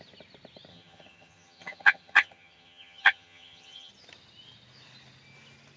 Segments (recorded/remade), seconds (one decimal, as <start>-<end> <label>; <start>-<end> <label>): 0.0-0.7 recorded; 0.7-3.9 remade; 3.9-5.8 recorded